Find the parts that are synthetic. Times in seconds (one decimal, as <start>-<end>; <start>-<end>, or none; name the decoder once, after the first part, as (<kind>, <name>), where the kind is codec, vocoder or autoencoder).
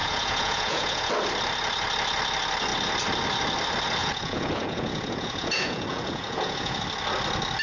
0.0-1.1 (vocoder, Vocos); 4.0-6.8